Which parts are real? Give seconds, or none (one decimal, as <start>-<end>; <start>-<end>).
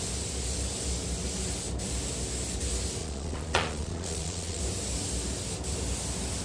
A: 0.0-3.0; 4.6-6.4